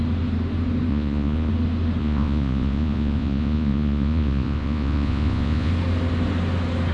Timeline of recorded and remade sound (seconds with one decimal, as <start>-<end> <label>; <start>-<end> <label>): 0.0-0.9 recorded; 0.9-1.5 remade; 1.5-2.0 recorded; 2.0-5.7 remade; 5.7-6.9 recorded